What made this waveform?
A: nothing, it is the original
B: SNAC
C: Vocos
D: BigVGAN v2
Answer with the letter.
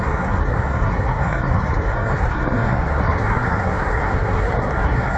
B